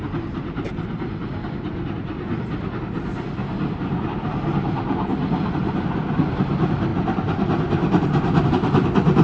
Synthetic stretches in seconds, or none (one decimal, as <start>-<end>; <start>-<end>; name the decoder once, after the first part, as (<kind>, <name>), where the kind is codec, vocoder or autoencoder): none